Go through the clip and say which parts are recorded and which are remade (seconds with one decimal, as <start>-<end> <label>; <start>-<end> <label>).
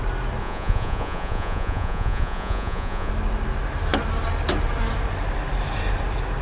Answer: 0.0-0.4 recorded; 0.4-3.1 remade; 3.1-6.4 recorded